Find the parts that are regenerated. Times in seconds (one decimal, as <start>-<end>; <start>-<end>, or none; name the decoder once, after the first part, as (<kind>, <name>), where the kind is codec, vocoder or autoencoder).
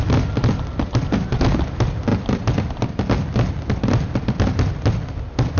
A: none